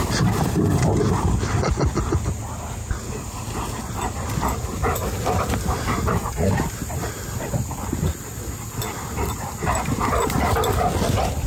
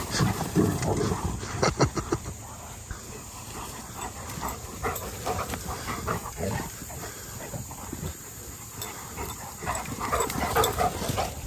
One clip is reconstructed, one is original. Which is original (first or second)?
first